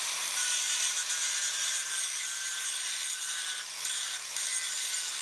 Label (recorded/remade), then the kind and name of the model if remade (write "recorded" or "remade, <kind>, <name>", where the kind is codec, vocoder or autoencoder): remade, vocoder, BigVGAN v2